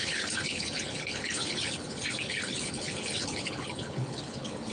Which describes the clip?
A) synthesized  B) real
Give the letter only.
A